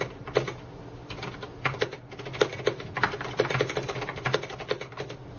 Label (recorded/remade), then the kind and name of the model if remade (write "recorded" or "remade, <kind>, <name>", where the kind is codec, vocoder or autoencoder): recorded